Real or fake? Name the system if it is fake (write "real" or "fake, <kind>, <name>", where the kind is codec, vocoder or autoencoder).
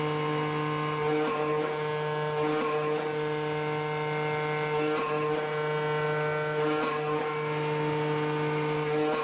real